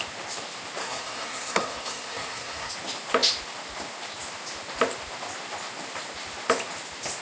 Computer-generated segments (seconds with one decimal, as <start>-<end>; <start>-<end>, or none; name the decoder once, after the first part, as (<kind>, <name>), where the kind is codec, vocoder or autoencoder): 0.8-2.7 (codec, SNAC)